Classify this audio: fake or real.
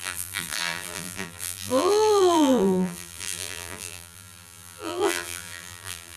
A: fake